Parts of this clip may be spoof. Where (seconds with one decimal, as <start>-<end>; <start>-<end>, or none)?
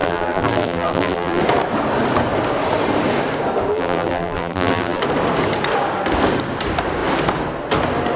0.0-1.4; 3.7-5.0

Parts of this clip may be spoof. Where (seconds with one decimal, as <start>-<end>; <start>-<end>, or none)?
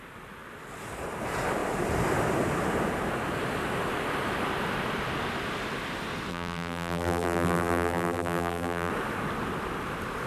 6.3-8.9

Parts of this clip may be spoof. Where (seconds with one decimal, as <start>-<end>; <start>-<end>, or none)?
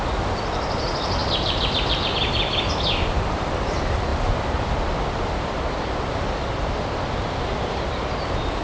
0.0-8.6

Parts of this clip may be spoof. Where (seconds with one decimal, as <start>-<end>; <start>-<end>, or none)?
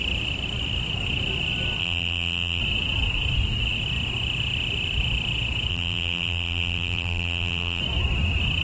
1.8-2.6; 5.7-7.8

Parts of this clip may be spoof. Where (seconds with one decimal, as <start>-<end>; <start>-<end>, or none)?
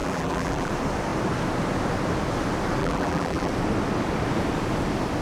0.0-0.7; 2.8-3.5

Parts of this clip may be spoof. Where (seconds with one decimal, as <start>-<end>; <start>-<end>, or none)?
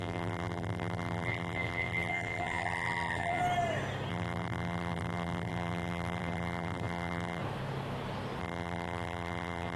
0.0-3.4; 4.1-7.4; 8.4-9.8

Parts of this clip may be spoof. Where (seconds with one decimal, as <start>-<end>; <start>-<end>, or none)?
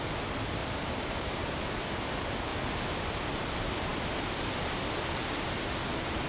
0.6-1.7